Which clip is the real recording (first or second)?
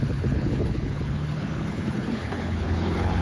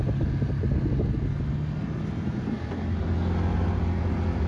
second